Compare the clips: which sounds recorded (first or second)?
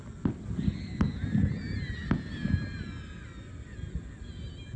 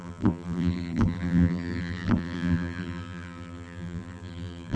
first